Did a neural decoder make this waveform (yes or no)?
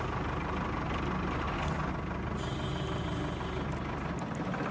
no